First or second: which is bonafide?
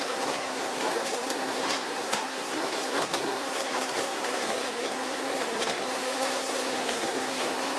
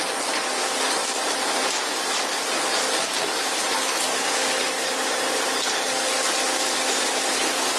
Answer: second